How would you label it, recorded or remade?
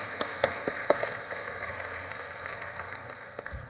remade